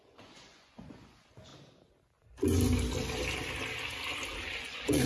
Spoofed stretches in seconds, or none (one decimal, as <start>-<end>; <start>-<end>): 0.0-1.5; 4.6-5.1